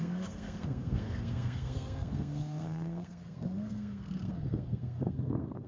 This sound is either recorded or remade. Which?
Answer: remade